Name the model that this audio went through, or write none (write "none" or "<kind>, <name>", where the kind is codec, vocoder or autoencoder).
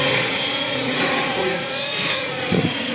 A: vocoder, Vocos